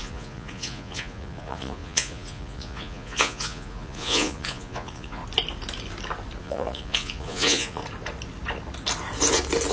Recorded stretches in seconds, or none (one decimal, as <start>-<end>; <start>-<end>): 5.2-6.4; 7.8-9.7